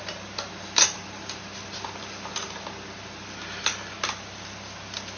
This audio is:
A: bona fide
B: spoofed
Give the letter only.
A